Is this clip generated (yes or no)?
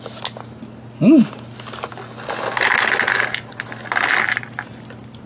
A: no